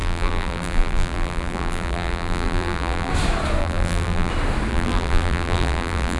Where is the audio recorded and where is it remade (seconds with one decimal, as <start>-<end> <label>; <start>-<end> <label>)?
0.0-3.1 remade; 3.1-3.6 recorded; 3.6-4.3 remade; 4.3-4.7 recorded; 4.7-6.2 remade